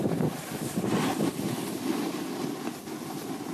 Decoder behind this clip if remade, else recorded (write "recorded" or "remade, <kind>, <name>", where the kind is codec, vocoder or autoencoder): recorded